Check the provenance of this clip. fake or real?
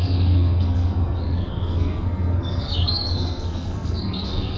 fake